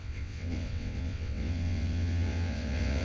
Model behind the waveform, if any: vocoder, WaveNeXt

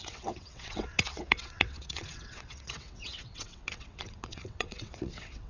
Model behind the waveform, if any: vocoder, WaveNeXt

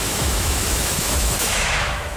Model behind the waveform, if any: autoencoder, DAC-VAE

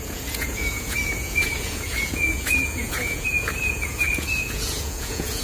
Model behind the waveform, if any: vocoder, Vocos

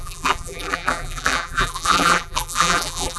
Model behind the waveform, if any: vocoder, BigVGAN v2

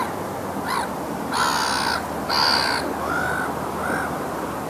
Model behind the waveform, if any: none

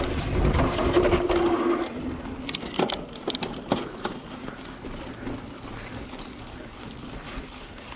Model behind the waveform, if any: none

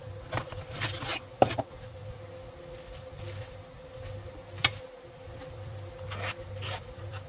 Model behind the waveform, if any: vocoder, BigVGAN v2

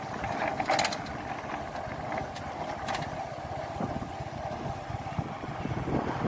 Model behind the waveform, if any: none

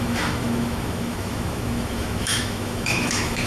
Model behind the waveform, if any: autoencoder, DAC-VAE